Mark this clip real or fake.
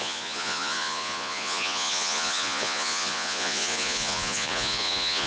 fake